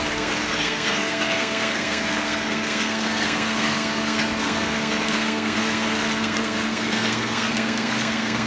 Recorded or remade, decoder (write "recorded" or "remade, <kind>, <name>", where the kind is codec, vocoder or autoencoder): remade, codec, SNAC